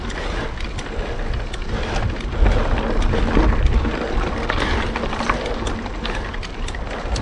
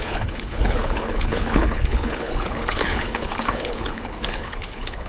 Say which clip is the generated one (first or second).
second